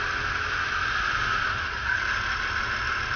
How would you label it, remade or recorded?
recorded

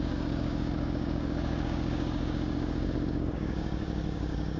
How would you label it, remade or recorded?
remade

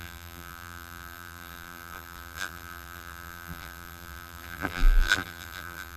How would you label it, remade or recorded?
remade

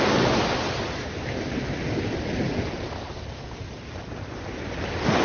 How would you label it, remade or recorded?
recorded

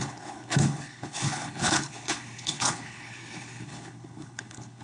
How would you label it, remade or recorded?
remade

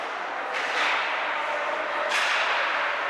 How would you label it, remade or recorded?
recorded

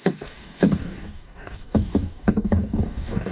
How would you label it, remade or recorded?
remade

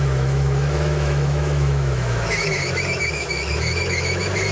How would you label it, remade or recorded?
remade